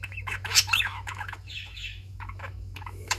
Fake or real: fake